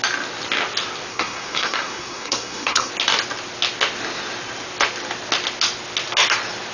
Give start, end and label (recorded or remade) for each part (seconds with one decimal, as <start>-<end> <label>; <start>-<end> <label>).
0.0-1.1 recorded; 1.1-2.9 remade; 2.9-6.7 recorded